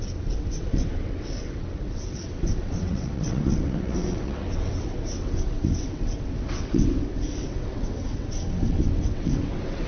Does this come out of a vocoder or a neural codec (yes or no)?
yes